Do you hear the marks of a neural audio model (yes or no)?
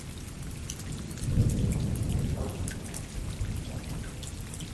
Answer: no